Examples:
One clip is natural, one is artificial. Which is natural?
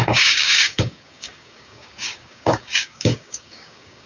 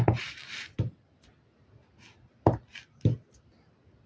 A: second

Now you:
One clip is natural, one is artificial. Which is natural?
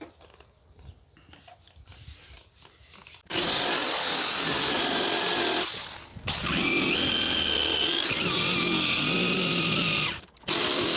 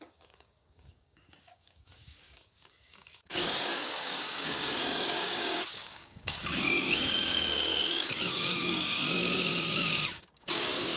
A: first